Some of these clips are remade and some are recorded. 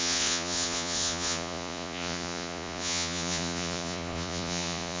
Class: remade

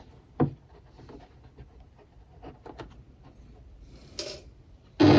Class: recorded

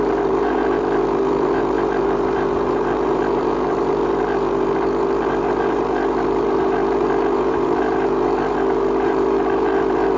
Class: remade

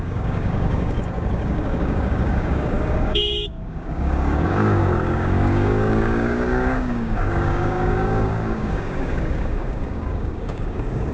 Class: remade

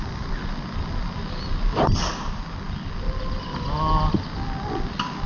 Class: recorded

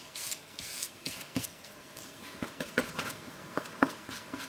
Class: remade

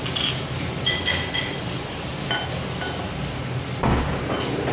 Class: recorded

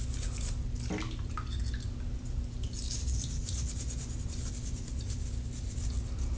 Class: recorded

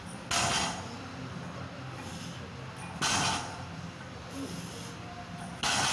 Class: recorded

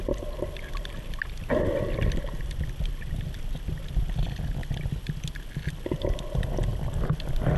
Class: recorded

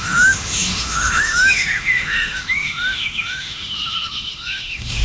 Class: remade